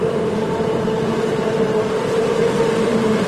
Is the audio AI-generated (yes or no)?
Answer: yes